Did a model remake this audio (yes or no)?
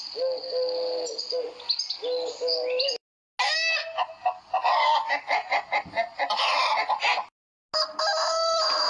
no